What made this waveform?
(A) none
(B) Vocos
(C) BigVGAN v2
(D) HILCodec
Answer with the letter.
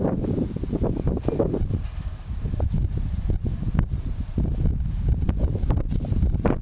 C